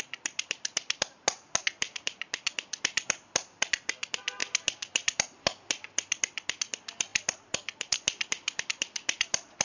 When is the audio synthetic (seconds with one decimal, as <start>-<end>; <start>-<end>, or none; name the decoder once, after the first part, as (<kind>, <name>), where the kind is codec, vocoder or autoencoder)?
none